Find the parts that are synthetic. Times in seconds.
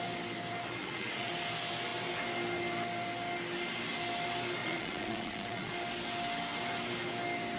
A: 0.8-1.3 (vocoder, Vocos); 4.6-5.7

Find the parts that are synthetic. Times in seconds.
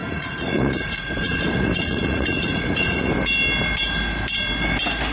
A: 0.0-3.1 (vocoder, Vocos)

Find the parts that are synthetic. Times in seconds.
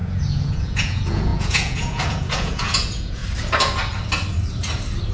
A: 0.0-3.2 (vocoder, Vocos)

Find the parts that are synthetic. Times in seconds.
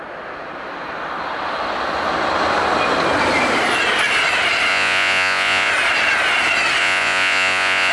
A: 4.7-5.7 (vocoder, Vocos); 6.8-7.9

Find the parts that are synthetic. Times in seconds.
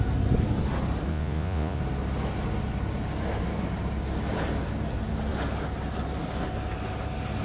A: 1.1-1.8 (vocoder, Vocos)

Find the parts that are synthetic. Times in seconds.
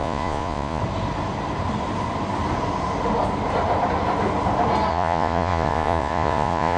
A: 0.0-0.8 (vocoder, Vocos); 4.9-6.8